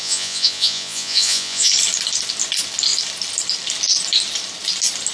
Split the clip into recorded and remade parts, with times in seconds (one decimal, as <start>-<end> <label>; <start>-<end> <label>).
0.0-1.7 remade; 1.7-5.1 recorded